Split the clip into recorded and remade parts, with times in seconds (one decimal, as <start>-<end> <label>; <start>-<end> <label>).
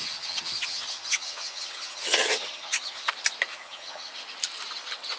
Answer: 0.0-3.1 remade; 3.1-3.5 recorded; 3.5-4.1 remade; 4.1-5.2 recorded